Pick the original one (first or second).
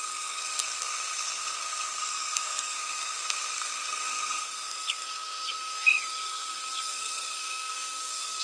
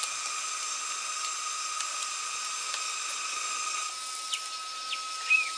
second